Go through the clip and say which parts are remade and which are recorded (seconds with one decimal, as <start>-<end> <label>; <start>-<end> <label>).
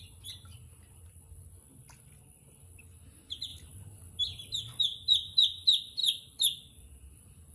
0.0-7.5 recorded